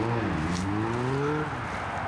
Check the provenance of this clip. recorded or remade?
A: recorded